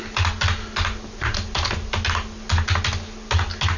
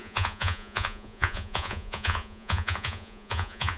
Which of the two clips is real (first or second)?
first